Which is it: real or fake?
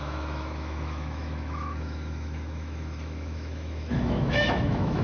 fake